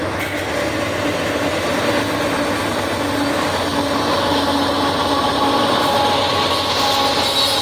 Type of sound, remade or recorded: recorded